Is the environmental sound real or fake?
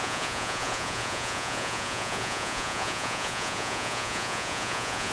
fake